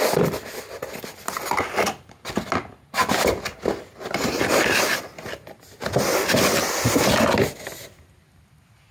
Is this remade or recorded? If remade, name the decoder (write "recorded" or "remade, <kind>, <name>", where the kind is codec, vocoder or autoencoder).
recorded